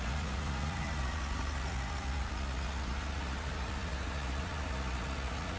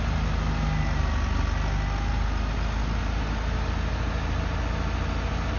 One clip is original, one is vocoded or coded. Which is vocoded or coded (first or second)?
first